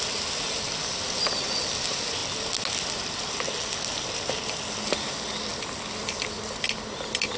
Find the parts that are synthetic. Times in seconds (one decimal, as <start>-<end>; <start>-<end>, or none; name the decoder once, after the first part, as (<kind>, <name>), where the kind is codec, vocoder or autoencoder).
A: none